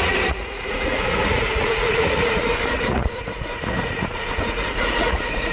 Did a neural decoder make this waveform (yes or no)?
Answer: yes